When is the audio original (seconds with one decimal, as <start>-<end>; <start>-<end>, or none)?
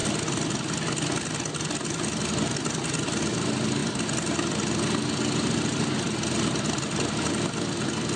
0.0-8.2